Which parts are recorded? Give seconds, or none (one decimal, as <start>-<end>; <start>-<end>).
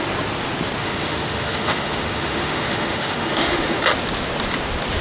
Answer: 0.0-0.8; 3.8-5.0